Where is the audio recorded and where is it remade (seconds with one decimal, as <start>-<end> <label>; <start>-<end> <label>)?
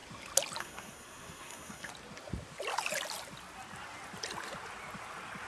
0.0-0.6 recorded; 0.6-1.9 remade; 1.9-5.5 recorded